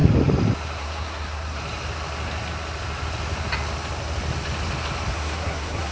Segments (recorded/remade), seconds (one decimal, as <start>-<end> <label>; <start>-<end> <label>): 0.0-0.8 recorded; 0.8-1.6 remade; 1.6-5.1 recorded; 5.1-5.9 remade